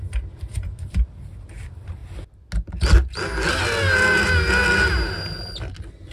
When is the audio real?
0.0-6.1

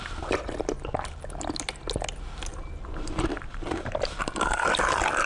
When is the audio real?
0.0-2.5; 4.3-5.3

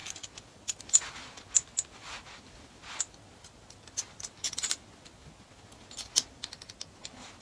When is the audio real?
0.0-7.4

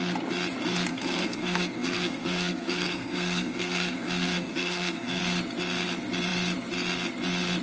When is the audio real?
0.0-0.9; 5.2-7.6